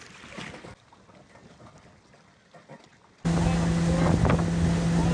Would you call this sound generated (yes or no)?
no